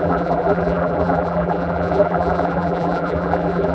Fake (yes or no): yes